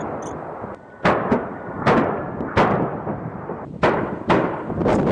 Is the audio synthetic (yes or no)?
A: no